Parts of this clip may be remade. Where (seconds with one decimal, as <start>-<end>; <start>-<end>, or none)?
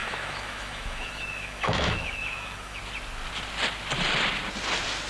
0.0-2.8